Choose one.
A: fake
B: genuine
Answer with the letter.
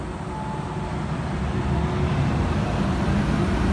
B